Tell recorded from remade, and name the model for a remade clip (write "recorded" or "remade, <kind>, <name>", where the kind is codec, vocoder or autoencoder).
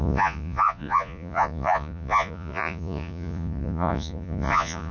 remade, vocoder, Vocos